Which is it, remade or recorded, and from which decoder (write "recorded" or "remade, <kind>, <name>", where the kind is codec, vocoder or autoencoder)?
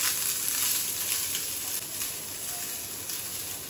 recorded